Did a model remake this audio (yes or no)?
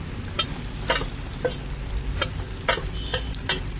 no